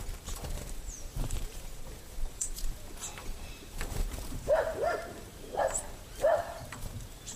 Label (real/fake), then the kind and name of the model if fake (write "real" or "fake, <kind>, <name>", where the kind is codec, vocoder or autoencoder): fake, vocoder, BigVGAN v2